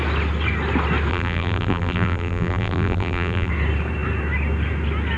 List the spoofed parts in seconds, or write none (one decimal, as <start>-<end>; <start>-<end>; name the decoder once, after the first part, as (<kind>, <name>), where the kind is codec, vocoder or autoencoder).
1.1-3.5 (vocoder, BigVGAN v2)